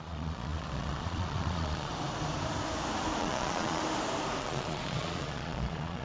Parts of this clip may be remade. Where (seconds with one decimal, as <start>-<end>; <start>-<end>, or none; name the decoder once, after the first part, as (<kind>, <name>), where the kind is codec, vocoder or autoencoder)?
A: 0.0-1.9 (vocoder, Vocos); 3.2-3.8; 4.4-6.0